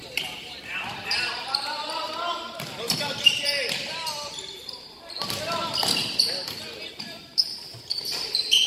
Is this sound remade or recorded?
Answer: remade